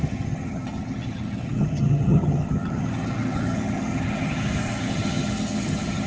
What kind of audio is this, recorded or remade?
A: remade